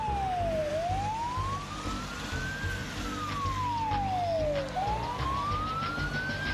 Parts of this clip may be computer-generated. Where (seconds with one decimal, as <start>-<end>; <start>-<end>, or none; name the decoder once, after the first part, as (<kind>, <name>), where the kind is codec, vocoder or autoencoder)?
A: none